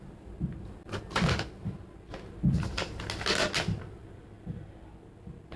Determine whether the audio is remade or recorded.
recorded